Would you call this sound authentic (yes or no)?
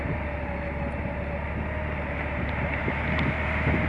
yes